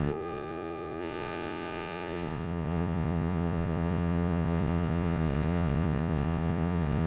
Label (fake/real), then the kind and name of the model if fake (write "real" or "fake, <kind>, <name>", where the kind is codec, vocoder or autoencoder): fake, vocoder, Vocos